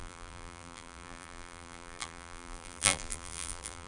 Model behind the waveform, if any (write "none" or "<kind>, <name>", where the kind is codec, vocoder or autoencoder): vocoder, BigVGAN v2